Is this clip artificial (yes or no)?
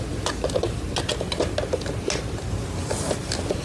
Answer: no